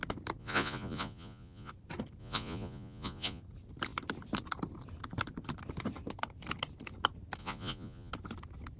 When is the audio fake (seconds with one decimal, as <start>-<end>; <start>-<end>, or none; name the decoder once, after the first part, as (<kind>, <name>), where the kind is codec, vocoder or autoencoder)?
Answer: 0.4-1.7 (vocoder, Vocos); 2.2-3.4; 7.4-8.1